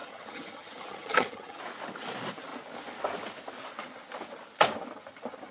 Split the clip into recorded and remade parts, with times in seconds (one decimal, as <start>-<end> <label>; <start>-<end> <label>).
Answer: 0.0-1.6 remade; 1.6-5.5 recorded